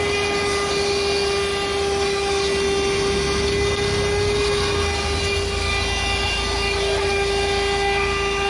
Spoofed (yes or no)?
no